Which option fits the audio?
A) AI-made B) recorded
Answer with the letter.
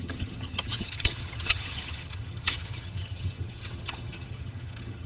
A